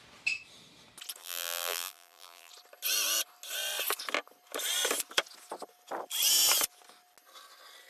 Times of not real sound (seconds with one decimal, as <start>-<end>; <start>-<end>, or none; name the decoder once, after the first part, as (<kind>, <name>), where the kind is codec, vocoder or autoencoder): 1.2-2.5 (vocoder, BigVGAN v2)